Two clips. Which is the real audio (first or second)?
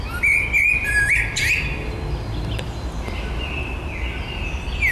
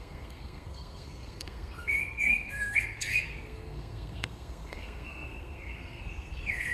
first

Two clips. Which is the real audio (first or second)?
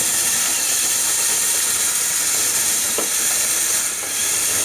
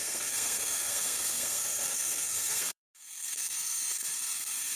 first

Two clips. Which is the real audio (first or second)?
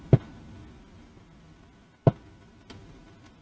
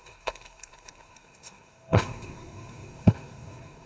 first